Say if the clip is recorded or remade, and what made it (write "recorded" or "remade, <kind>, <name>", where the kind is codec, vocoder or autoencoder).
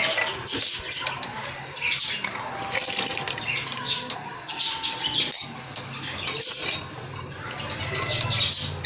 recorded